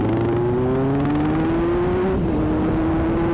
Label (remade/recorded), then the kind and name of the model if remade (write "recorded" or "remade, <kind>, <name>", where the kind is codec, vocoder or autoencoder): recorded